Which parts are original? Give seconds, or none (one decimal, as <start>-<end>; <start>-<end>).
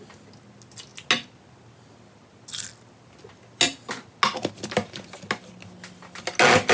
0.0-6.7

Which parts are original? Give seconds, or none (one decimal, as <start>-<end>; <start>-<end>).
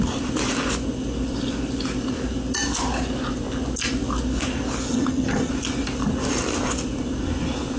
0.0-4.9; 5.5-7.8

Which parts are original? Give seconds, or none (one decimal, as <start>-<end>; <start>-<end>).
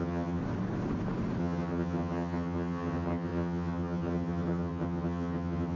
0.4-1.4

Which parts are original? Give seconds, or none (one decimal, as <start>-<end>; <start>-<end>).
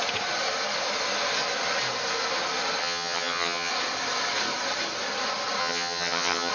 0.0-2.8; 3.7-5.6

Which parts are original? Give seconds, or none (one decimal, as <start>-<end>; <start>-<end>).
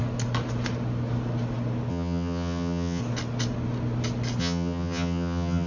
0.0-1.9; 3.0-4.4